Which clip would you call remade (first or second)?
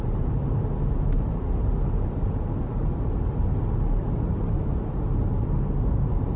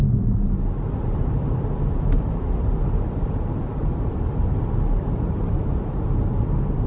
second